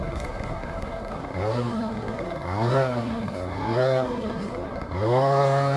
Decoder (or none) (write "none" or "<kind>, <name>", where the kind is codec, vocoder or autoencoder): codec, SNAC